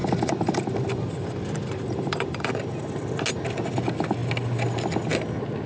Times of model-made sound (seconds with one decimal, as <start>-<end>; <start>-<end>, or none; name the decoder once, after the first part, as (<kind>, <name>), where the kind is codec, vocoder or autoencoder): 0.0-2.6 (vocoder, BigVGAN v2)